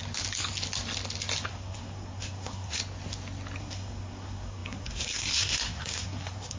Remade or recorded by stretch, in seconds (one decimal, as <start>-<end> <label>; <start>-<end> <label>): 0.0-1.5 recorded; 1.5-2.8 remade; 2.8-3.6 recorded; 3.6-6.6 remade